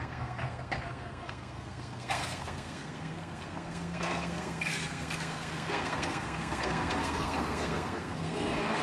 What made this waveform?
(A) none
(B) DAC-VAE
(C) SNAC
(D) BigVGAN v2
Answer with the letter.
C